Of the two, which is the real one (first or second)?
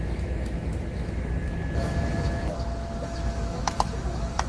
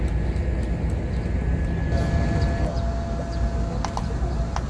second